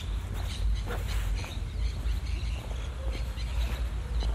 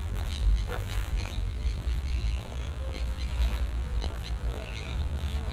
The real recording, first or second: first